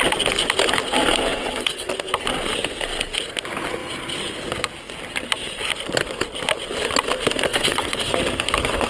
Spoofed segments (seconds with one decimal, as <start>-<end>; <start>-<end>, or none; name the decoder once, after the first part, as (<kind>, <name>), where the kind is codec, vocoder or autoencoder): 1.3-1.9 (vocoder, WaveNeXt); 7.5-8.1